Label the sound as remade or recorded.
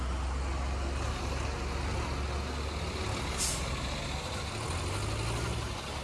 recorded